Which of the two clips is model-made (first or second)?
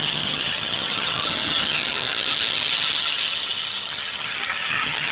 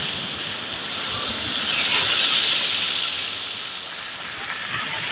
first